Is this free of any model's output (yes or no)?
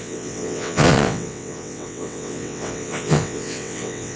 no